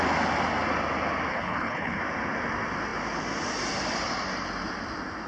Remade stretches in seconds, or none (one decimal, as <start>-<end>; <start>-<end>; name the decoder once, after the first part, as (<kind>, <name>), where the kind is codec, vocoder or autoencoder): 1.3-2.0 (codec, HILCodec)